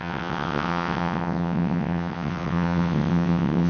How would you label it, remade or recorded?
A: remade